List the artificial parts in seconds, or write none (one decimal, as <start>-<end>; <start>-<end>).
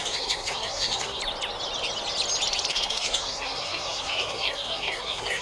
0.0-1.2; 2.7-5.4